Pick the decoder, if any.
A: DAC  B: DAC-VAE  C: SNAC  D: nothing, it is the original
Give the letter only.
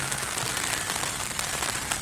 D